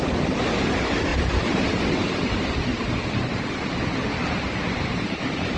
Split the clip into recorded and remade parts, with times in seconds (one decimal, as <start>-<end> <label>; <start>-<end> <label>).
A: 0.0-1.1 recorded; 1.1-1.7 remade; 1.7-2.7 recorded; 2.7-3.3 remade; 3.3-4.1 recorded; 4.1-5.6 remade